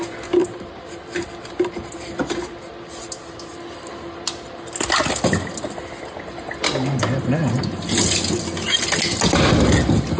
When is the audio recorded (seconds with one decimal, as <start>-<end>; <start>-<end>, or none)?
0.0-10.2